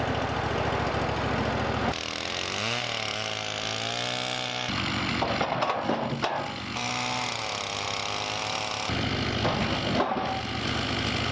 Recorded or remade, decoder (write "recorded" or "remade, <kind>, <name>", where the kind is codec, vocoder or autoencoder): recorded